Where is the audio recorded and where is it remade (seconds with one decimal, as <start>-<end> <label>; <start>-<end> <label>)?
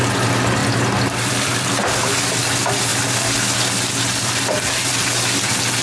0.0-0.6 recorded; 0.6-2.3 remade; 2.3-5.8 recorded